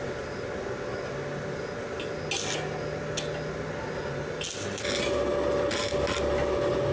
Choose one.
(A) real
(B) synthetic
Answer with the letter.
A